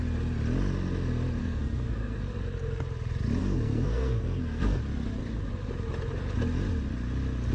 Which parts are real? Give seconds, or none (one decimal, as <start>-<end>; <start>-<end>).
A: 0.0-1.4; 2.2-3.4; 4.8-7.5